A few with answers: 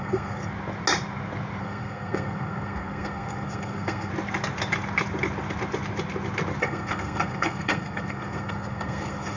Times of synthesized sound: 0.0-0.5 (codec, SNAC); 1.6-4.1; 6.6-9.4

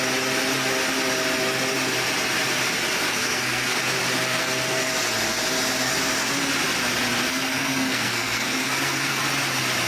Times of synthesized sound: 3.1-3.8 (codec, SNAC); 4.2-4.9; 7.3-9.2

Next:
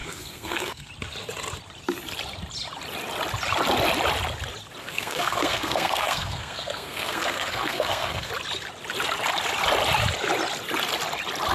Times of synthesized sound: 0.0-0.9 (codec, SNAC); 4.8-8.3

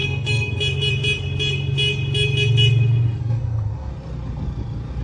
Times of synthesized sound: 0.0-0.6 (codec, SNAC); 3.2-3.9